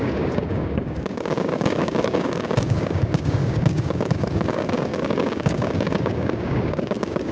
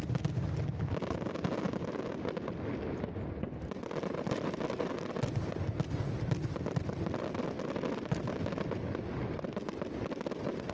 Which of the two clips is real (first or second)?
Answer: second